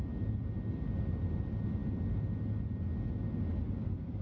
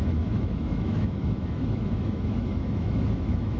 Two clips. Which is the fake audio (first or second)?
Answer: second